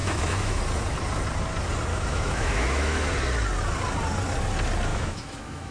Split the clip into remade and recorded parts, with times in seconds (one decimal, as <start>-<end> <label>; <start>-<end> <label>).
0.0-0.6 remade; 0.6-1.9 recorded; 1.9-3.1 remade; 3.1-4.9 recorded; 4.9-5.7 remade

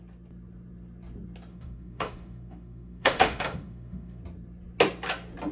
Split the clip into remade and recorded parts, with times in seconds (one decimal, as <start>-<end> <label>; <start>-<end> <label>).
0.0-1.5 recorded; 1.5-4.2 remade; 4.2-5.5 recorded